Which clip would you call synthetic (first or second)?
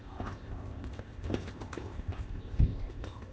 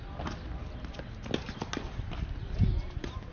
first